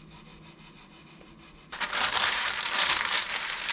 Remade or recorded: recorded